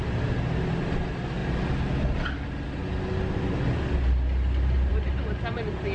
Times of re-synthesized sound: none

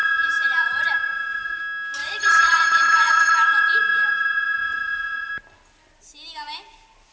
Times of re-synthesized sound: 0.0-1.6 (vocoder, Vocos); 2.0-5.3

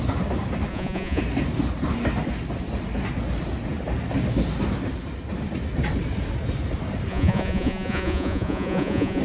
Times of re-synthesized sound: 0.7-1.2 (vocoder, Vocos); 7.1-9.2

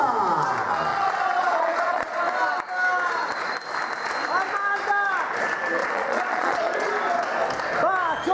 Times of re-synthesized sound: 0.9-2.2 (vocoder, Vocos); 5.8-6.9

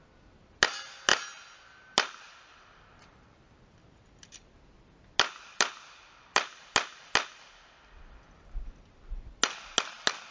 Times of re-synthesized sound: none

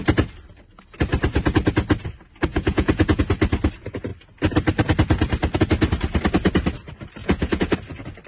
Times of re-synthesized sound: 2.5-3.2 (vocoder, Vocos); 7.2-7.7

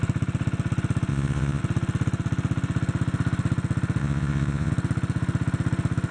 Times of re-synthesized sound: 1.1-1.6 (vocoder, Vocos); 4.0-4.7

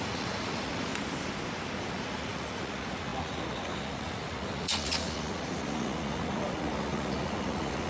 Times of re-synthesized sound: 0.0-0.9 (vocoder, Vocos); 1.9-7.9